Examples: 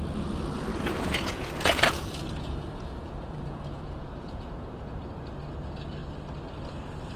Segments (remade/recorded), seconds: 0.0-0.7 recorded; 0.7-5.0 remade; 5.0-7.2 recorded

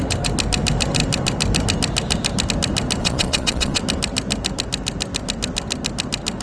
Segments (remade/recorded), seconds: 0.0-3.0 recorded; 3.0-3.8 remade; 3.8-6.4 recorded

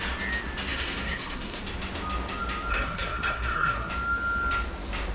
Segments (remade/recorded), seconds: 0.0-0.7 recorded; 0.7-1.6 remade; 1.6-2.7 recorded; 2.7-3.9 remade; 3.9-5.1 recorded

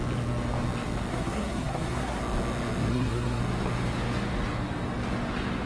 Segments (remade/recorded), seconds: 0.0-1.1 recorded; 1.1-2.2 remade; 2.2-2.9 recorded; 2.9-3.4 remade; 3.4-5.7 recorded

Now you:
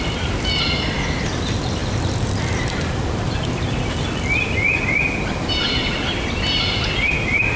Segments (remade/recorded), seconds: 0.0-7.6 recorded